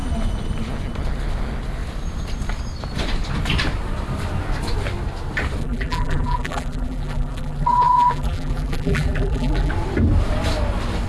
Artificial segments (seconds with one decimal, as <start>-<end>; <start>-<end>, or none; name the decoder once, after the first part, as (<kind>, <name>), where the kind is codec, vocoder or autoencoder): 5.6-9.7 (vocoder, BigVGAN v2)